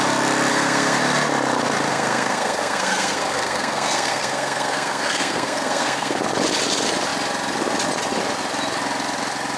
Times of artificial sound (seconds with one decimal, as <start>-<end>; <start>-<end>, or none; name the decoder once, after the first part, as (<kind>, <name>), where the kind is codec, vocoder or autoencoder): 0.5-1.0 (codec, SNAC); 1.9-6.2